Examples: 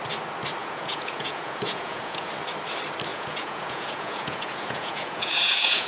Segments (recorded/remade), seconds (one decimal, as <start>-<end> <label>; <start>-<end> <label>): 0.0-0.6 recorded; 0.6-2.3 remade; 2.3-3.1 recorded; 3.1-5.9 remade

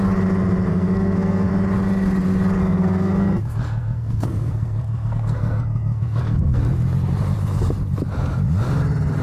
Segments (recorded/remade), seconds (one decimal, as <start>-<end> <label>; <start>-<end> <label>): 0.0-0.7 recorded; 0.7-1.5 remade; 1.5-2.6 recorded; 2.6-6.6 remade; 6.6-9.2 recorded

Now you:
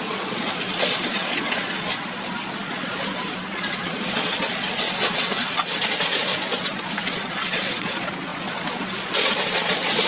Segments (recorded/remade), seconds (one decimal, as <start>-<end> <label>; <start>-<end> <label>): 0.0-10.1 remade

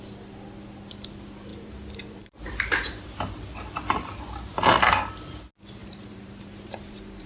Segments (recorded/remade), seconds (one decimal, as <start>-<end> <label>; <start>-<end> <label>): 0.0-1.5 recorded; 1.5-3.4 remade; 3.4-5.8 recorded; 5.8-7.3 remade

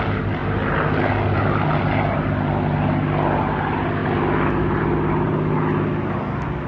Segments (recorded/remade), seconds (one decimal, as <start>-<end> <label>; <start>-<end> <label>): 0.0-6.7 recorded